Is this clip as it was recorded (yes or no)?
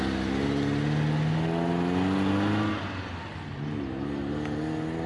yes